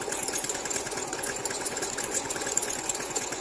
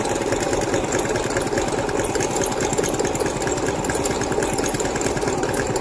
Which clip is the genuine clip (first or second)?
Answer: second